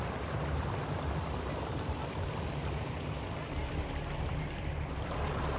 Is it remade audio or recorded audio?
remade